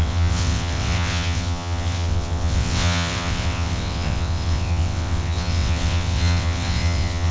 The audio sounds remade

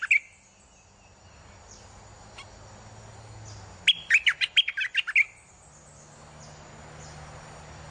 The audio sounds recorded